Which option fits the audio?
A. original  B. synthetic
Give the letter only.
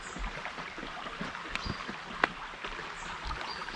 A